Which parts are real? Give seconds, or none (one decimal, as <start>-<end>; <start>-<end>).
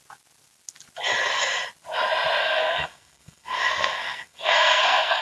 0.0-2.4